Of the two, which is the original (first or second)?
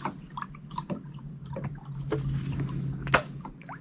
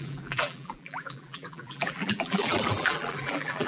first